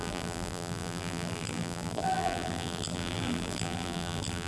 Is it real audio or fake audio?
fake